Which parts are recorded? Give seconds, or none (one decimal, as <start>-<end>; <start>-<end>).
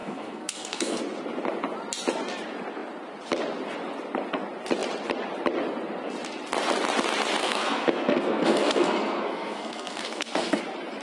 1.0-7.4; 10.6-11.0